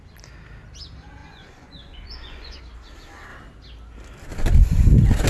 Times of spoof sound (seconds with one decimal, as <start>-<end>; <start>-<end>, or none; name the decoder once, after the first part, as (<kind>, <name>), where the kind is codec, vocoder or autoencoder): 1.2-2.6 (vocoder, Vocos)